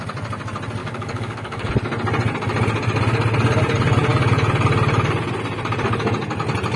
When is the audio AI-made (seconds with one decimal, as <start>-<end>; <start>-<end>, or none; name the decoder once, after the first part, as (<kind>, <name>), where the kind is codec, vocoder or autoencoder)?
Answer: 0.8-1.7 (codec, DAC)